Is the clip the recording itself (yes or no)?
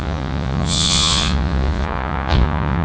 no